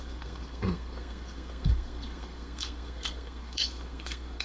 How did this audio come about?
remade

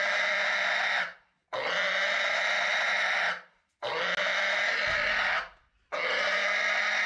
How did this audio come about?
recorded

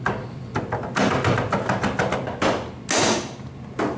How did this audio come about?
recorded